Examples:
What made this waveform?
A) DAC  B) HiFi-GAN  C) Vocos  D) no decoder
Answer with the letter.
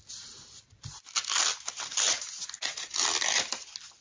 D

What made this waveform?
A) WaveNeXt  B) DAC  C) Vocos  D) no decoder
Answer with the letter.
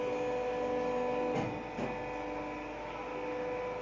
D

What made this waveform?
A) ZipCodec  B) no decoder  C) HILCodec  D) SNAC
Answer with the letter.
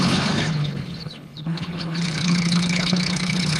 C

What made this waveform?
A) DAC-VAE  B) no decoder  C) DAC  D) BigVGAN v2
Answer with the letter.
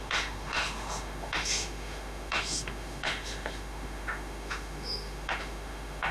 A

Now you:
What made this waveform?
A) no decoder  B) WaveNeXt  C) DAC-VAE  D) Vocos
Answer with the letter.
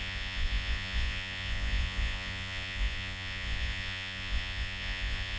D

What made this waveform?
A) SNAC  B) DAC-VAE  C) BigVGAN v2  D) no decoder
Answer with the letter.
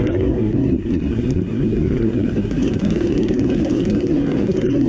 A